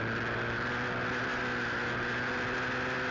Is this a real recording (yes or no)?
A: yes